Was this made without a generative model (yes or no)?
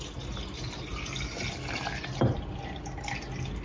yes